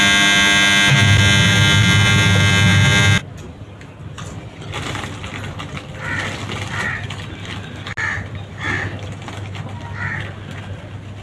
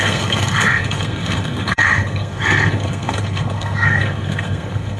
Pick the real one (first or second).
first